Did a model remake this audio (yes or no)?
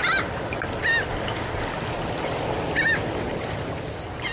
no